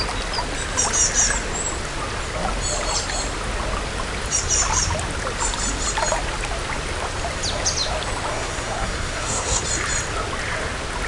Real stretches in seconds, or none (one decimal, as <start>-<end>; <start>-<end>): 0.0-8.3; 9.6-11.1